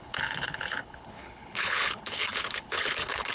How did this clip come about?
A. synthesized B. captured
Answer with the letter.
A